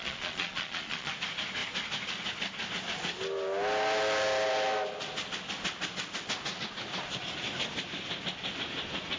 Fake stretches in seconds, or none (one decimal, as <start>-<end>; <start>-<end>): 0.0-1.1